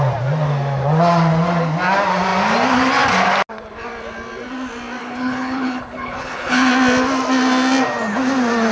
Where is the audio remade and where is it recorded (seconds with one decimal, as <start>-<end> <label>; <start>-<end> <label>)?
0.0-5.0 recorded; 5.0-6.7 remade; 6.7-8.7 recorded